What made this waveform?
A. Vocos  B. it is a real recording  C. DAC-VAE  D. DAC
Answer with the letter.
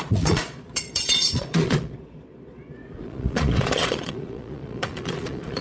A